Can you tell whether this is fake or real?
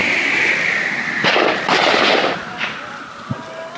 real